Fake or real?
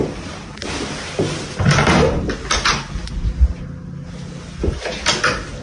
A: real